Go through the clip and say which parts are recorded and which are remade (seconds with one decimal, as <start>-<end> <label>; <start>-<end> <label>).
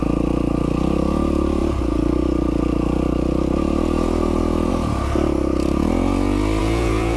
0.0-6.6 recorded; 6.6-7.2 remade